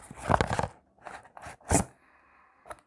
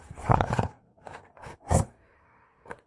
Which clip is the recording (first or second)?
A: first